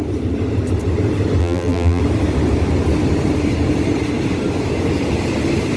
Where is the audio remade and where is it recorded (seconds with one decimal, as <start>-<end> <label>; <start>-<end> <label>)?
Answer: 0.0-1.4 recorded; 1.4-2.0 remade; 2.0-5.8 recorded